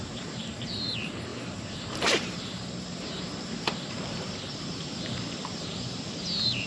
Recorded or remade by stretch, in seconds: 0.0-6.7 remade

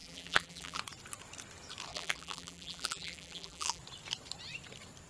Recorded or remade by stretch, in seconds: 0.0-0.8 remade; 0.8-1.9 recorded; 1.9-3.8 remade; 3.8-5.1 recorded

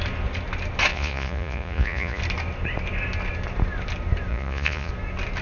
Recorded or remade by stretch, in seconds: 0.0-0.9 recorded; 0.9-2.2 remade; 2.2-4.3 recorded; 4.3-4.9 remade; 4.9-5.4 recorded

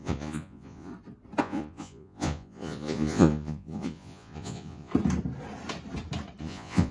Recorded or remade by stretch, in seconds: 0.0-0.9 remade; 0.9-1.4 recorded; 1.4-4.9 remade; 4.9-6.4 recorded; 6.4-6.9 remade

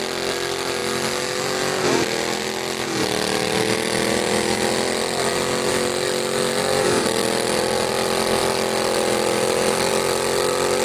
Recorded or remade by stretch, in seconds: 0.0-7.2 recorded; 7.2-7.9 remade; 7.9-10.8 recorded